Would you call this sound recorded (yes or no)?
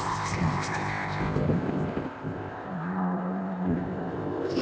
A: no